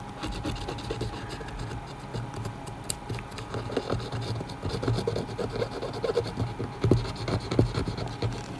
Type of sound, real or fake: real